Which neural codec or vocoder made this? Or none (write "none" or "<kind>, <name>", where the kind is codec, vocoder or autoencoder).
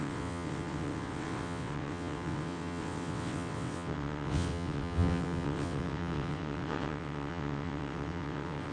vocoder, WaveNeXt